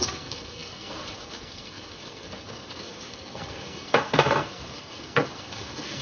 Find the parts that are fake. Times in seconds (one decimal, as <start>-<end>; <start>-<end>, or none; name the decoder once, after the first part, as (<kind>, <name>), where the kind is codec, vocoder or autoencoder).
0.0-6.0 (codec, SNAC)